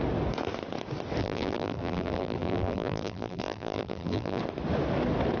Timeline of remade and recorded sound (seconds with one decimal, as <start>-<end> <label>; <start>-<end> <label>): 0.0-1.2 recorded; 1.2-4.4 remade; 4.4-5.4 recorded